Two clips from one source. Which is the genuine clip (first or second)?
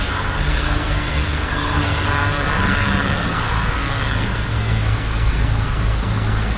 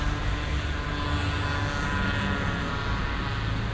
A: second